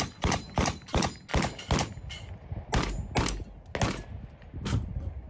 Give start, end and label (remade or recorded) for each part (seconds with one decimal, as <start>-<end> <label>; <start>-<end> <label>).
0.0-5.3 recorded